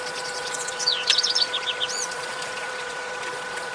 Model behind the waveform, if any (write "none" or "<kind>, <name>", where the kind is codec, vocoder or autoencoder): vocoder, Vocos